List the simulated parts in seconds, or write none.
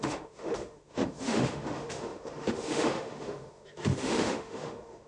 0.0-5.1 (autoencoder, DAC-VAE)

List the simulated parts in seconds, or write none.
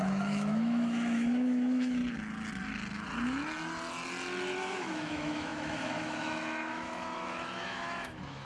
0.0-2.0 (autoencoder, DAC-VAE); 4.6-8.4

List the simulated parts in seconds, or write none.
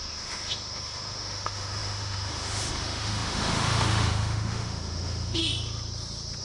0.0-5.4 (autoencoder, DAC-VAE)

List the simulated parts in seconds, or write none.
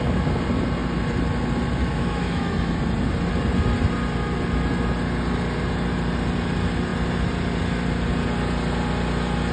1.8-2.8 (autoencoder, DAC-VAE)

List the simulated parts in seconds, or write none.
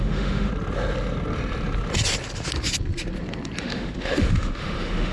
0.0-0.5 (autoencoder, DAC-VAE); 3.6-5.1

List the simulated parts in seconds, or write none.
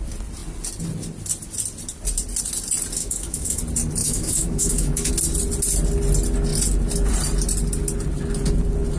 3.0-3.6 (autoencoder, DAC-VAE); 4.0-5.1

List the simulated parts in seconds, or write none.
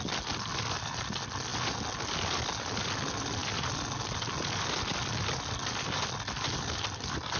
none